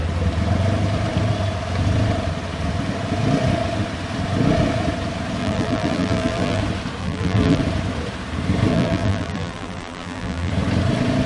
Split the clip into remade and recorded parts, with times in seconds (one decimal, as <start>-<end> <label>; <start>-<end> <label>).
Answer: 0.0-5.4 recorded; 5.4-6.6 remade; 6.6-7.0 recorded; 7.0-7.6 remade; 7.6-8.7 recorded; 8.7-10.5 remade; 10.5-11.3 recorded